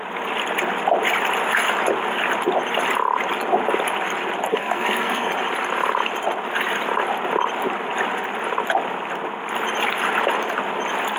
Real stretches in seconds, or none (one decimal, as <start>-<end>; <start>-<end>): 0.0-4.5; 5.3-11.2